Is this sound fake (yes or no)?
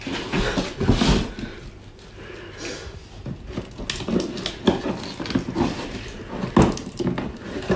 no